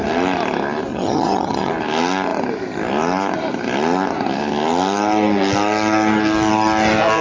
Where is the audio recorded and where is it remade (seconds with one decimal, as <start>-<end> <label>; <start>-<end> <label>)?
0.0-0.9 recorded; 0.9-1.7 remade; 1.7-7.2 recorded